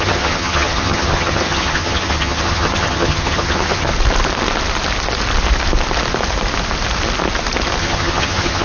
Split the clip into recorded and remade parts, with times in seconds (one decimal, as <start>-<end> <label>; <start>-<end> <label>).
0.0-3.9 remade; 3.9-7.8 recorded; 7.8-8.6 remade